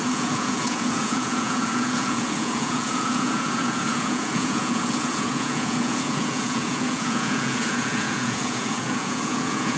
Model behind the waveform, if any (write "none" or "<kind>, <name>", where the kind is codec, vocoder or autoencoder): vocoder, Vocos